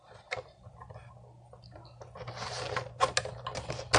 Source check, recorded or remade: recorded